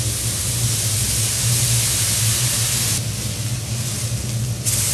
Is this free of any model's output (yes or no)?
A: yes